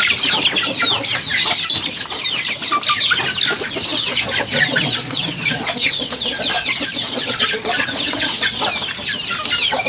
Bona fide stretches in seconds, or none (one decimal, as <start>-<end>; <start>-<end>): 0.0-3.9; 8.6-9.9